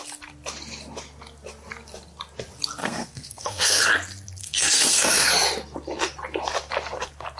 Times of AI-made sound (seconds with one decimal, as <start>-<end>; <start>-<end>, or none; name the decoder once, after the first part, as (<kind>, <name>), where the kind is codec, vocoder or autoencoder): 2.8-3.9 (codec, SNAC); 4.4-5.3